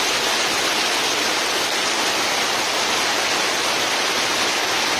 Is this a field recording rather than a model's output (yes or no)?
yes